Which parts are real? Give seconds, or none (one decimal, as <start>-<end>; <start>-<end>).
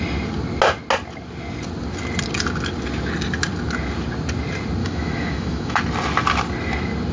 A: 0.0-4.8; 5.8-7.1